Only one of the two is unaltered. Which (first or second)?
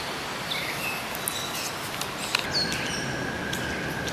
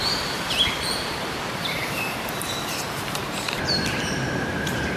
first